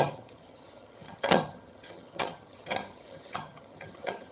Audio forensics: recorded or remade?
remade